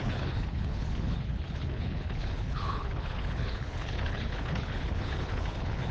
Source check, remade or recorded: remade